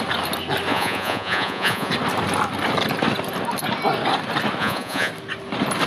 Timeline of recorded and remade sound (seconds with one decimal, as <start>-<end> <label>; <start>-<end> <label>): 0.0-0.7 recorded; 0.7-1.9 remade; 1.9-4.6 recorded; 4.6-5.1 remade; 5.1-5.9 recorded